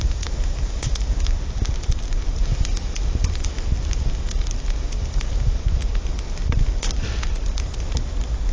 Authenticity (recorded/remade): recorded